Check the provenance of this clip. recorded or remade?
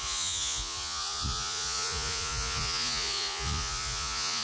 remade